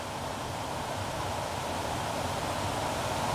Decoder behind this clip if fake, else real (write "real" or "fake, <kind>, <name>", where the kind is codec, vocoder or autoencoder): real